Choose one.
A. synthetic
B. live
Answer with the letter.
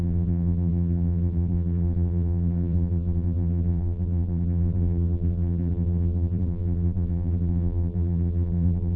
A